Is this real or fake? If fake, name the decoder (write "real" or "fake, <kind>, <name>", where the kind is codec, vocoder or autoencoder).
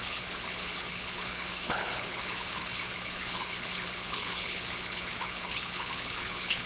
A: fake, codec, HILCodec